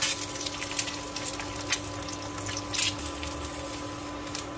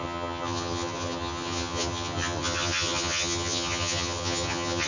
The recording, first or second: first